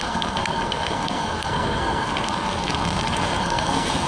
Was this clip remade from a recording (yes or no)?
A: yes